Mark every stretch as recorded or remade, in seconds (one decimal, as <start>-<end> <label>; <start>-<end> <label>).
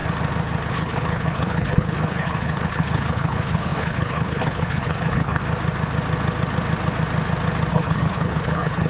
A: 0.0-0.7 recorded; 0.7-5.4 remade; 5.4-7.7 recorded; 7.7-8.9 remade